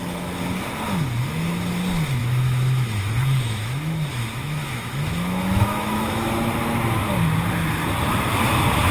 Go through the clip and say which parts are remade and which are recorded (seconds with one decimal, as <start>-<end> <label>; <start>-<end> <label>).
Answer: 0.0-2.2 recorded; 2.2-6.3 remade; 6.3-8.9 recorded